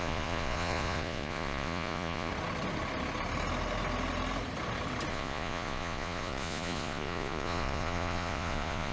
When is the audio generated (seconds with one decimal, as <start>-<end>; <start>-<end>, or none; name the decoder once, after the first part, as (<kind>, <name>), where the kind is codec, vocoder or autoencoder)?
0.0-2.3 (vocoder, Vocos); 5.1-8.9